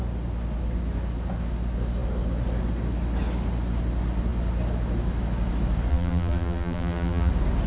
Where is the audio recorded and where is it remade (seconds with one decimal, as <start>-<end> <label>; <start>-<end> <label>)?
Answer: 0.0-5.9 recorded; 5.9-7.3 remade; 7.3-7.7 recorded